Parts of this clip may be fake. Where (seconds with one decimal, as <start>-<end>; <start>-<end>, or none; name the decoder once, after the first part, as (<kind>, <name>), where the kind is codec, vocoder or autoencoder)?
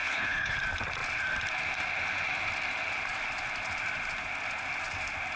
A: 0.0-0.6 (codec, HILCodec)